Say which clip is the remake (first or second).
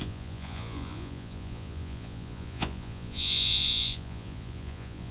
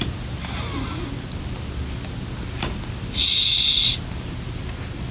first